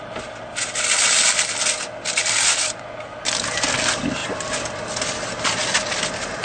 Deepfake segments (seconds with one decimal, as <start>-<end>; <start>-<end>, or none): none